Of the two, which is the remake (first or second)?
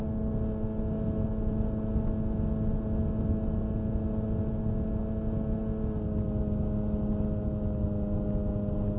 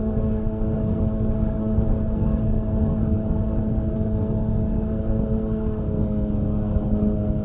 second